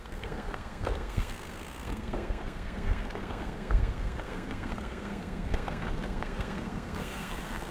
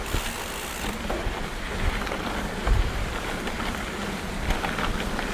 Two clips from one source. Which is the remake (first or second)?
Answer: first